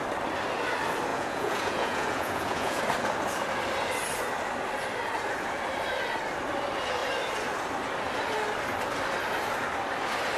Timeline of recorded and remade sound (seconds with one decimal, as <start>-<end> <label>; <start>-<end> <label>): 0.0-1.1 recorded; 1.1-2.8 remade; 2.8-10.4 recorded